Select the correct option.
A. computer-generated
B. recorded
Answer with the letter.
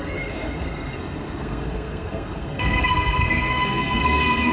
A